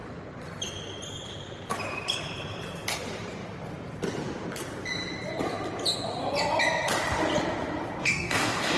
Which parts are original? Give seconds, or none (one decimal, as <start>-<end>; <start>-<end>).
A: 0.0-8.0